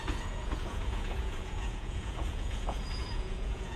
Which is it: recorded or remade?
remade